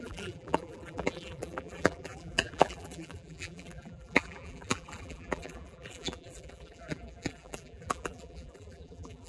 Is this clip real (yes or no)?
no